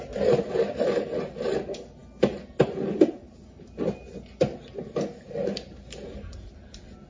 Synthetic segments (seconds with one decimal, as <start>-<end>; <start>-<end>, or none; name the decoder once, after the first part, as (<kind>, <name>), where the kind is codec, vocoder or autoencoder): none